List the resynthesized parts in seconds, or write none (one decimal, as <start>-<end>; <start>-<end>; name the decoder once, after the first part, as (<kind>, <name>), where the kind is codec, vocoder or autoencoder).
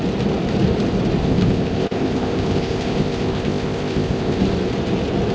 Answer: 1.2-4.4 (codec, ZipCodec)